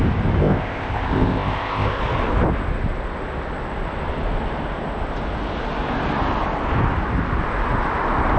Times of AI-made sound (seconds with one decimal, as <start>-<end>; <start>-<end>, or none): 0.4-2.0